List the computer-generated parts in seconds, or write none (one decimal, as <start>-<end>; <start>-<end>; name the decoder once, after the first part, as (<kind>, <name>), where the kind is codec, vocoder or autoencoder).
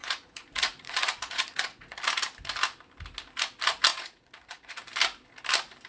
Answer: 0.0-2.0 (vocoder, Vocos); 3.9-4.8